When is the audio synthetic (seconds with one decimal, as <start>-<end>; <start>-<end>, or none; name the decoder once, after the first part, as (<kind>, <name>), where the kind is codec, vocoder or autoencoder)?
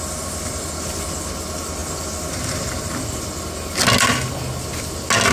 none